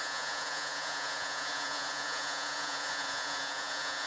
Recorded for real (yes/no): no